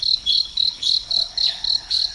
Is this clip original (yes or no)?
no